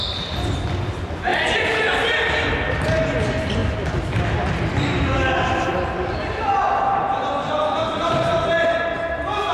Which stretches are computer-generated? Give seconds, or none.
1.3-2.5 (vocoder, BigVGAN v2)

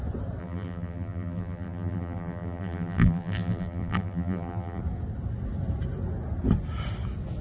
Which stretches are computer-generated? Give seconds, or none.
0.4-4.8 (vocoder, BigVGAN v2)

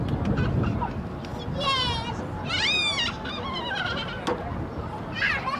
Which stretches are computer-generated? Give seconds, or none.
none

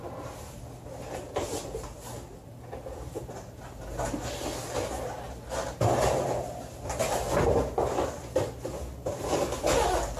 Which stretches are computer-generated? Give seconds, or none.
none